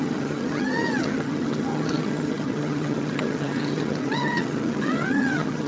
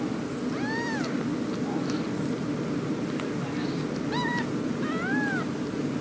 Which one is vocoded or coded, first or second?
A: first